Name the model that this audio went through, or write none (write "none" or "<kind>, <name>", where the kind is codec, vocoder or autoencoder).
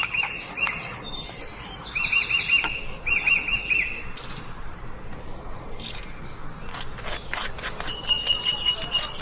none